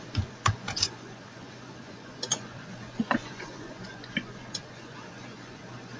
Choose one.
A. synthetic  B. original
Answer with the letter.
A